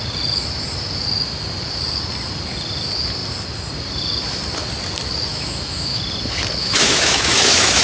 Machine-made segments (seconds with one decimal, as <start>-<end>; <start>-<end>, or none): 5.3-6.0; 6.6-7.8

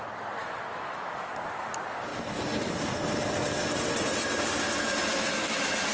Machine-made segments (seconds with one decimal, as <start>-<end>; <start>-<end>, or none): 0.4-1.3; 5.1-5.9

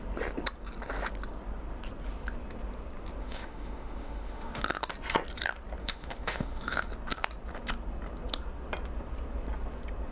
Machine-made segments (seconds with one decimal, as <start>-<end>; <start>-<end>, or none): 3.2-4.6; 5.8-6.9

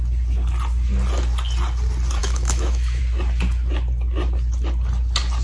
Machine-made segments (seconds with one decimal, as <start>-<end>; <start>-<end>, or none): 2.2-3.0